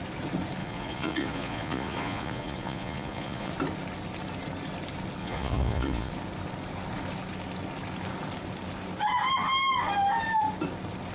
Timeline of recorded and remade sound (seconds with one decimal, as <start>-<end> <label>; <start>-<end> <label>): 0.0-0.6 recorded; 0.6-3.5 remade; 3.5-5.2 recorded; 5.2-6.1 remade; 6.1-11.1 recorded